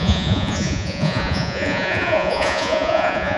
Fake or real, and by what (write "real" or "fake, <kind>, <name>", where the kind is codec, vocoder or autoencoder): fake, vocoder, Vocos